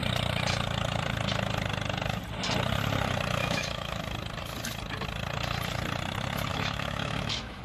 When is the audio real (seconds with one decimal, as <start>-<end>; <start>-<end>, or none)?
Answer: 0.0-3.4; 4.0-6.5